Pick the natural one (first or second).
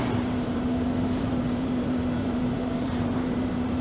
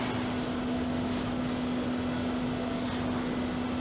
second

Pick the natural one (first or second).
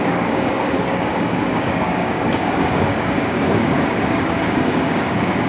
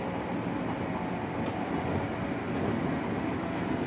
second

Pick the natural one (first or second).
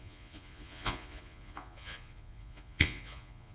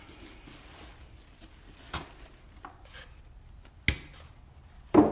second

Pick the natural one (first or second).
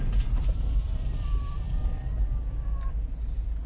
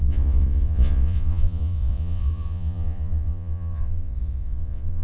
first